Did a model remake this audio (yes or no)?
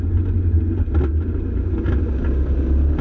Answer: no